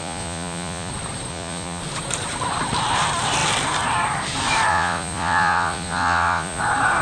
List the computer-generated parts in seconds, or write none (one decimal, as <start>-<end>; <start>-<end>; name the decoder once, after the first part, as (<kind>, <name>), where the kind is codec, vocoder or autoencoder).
0.0-0.9 (vocoder, Vocos); 1.3-1.8; 4.7-6.6